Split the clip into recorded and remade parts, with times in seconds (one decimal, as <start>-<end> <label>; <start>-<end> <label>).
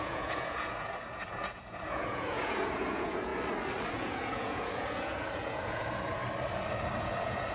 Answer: 0.0-3.3 remade; 3.3-3.9 recorded; 3.9-6.2 remade; 6.2-7.0 recorded; 7.0-7.5 remade